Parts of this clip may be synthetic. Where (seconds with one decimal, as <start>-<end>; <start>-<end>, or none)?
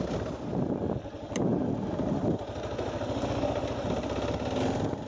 none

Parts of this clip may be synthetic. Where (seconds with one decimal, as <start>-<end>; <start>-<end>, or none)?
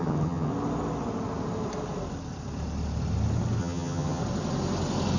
0.0-0.5; 3.6-4.2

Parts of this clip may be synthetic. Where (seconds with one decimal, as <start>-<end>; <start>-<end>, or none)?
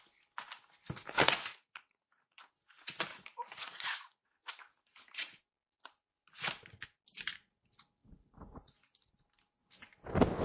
1.5-2.5; 3.1-4.5; 8.0-9.1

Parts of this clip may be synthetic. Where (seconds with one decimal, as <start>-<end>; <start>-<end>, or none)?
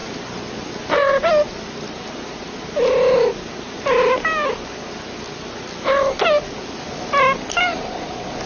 none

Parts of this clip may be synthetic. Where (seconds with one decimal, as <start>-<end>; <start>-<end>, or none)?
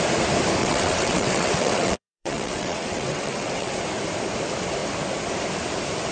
0.6-3.7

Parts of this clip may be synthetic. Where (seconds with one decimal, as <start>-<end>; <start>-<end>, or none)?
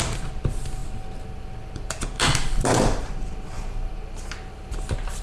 none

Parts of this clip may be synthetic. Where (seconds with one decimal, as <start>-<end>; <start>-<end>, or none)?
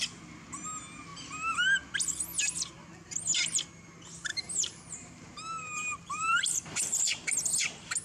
4.3-7.0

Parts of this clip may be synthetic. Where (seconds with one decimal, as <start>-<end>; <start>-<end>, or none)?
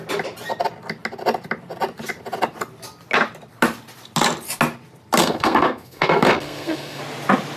5.2-7.0